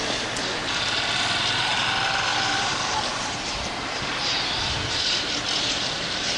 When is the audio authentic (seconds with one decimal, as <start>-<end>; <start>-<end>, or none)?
0.0-2.3

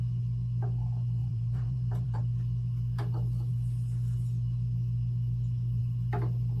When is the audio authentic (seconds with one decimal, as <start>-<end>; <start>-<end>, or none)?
0.0-1.2; 2.2-6.6

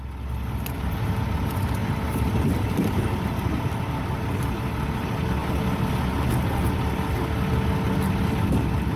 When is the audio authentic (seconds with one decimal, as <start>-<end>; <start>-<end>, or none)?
0.0-9.0